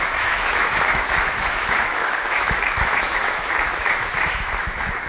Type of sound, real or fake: fake